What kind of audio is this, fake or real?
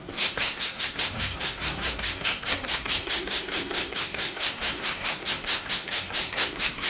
fake